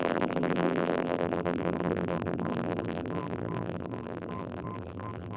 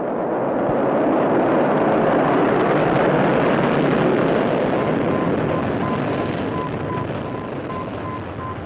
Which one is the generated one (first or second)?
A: first